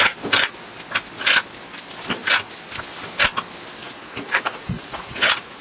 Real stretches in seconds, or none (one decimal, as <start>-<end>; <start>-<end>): 0.0-3.8